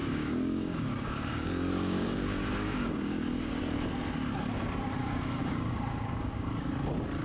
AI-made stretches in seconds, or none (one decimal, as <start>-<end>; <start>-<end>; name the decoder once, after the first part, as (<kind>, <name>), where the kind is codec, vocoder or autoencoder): 0.0-3.6 (codec, DAC); 5.0-6.7